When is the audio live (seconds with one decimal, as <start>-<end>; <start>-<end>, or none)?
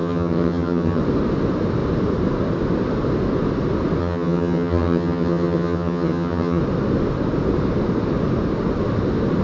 1.0-4.0; 6.6-9.4